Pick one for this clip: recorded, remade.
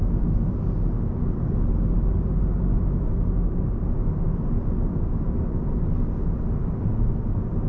recorded